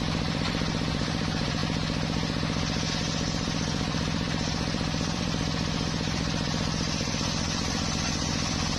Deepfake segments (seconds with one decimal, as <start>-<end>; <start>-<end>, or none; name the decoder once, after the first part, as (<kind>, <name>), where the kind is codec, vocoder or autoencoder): 0.0-1.6 (vocoder, BigVGAN v2); 2.9-8.8